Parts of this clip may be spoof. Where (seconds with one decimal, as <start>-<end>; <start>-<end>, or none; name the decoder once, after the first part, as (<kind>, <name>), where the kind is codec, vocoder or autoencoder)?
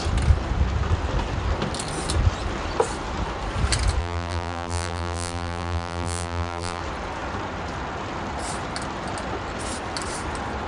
4.0-6.8 (vocoder, BigVGAN v2)